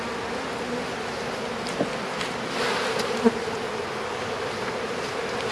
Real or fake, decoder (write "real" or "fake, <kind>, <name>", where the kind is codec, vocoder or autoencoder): real